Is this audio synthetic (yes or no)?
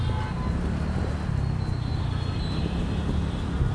no